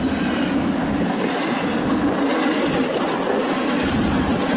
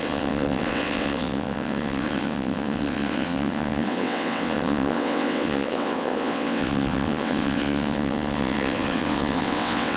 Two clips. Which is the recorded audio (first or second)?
first